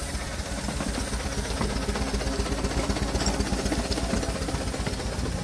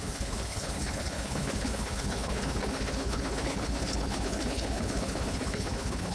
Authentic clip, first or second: first